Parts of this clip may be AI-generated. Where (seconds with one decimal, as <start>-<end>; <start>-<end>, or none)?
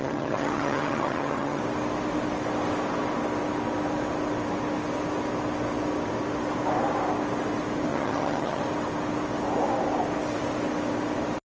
0.0-1.6; 7.9-8.6